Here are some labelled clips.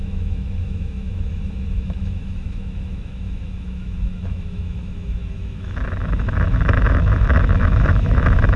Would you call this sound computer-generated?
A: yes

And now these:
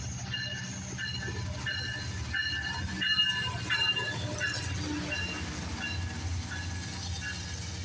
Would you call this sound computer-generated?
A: no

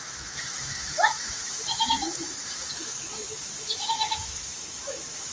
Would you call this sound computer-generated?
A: yes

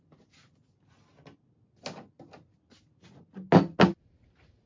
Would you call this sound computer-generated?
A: no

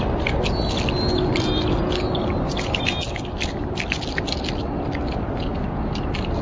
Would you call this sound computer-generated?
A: no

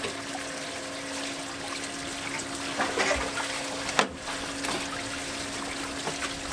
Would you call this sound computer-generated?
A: no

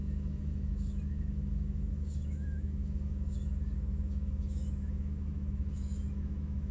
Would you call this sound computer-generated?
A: yes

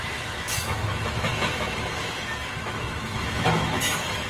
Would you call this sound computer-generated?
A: yes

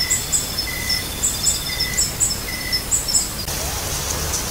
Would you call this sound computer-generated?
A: no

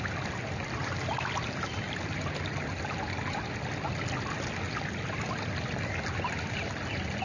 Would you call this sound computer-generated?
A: no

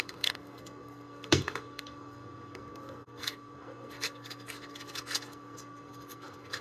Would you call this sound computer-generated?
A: yes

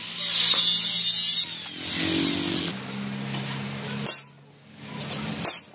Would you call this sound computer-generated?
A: no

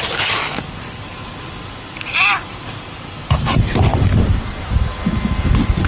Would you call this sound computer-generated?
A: no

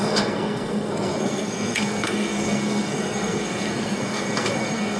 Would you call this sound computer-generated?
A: yes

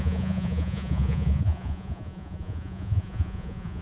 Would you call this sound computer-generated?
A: yes